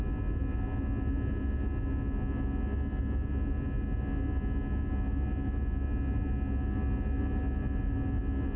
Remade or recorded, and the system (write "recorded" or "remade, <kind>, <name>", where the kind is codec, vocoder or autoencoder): recorded